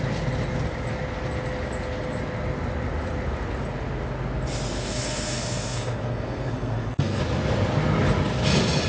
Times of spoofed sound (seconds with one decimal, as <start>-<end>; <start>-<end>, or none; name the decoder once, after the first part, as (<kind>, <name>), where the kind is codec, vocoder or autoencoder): 4.8-7.2 (codec, SNAC)